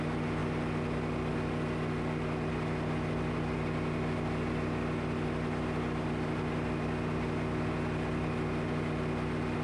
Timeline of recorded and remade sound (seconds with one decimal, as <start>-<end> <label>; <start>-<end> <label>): 0.0-9.6 recorded